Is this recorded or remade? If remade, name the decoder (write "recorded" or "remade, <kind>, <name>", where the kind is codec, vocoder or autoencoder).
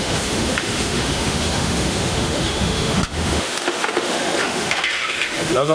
remade, autoencoder, DAC-VAE